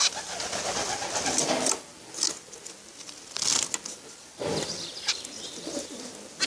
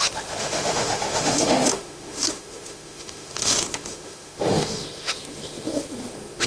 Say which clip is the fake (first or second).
second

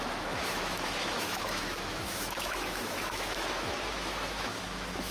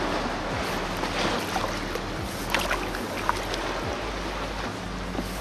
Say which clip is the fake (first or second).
first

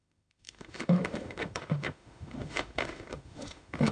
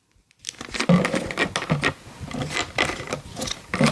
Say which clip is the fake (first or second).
first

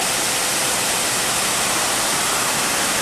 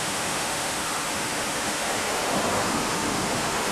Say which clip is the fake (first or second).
second